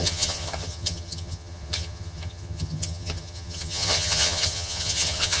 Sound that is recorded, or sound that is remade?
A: remade